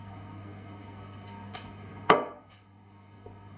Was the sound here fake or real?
fake